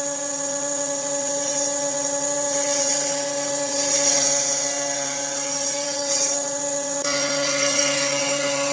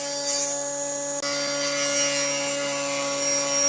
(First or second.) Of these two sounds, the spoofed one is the first